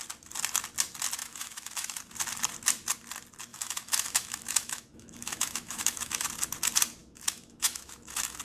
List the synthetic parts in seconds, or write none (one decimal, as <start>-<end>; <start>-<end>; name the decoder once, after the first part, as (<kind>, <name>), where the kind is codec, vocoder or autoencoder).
1.2-2.0 (autoencoder, DAC-VAE); 3.5-6.3; 7.0-8.4